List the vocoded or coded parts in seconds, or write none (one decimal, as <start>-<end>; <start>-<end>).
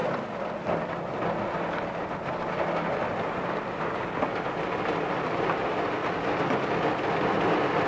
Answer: none